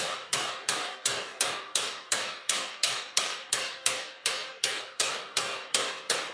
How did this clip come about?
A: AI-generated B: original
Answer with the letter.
A